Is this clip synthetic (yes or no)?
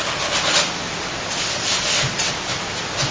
no